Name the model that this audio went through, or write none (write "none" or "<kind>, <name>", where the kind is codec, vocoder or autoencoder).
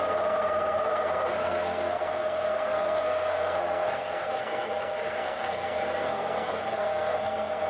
codec, SNAC